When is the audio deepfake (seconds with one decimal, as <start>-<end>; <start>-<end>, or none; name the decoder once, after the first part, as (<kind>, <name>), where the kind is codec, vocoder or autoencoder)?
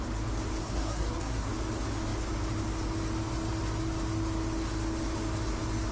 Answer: 0.6-1.5 (codec, SNAC)